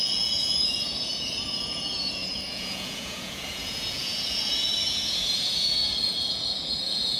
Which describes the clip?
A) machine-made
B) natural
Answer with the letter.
A